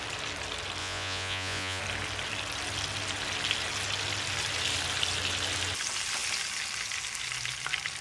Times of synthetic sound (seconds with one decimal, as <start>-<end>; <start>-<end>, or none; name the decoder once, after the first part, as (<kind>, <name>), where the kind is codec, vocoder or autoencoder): 0.8-1.8 (vocoder, Vocos)